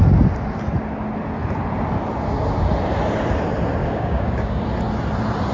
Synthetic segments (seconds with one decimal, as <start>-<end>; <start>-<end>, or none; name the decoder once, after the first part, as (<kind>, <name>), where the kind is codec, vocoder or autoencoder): 3.8-4.6 (codec, DAC)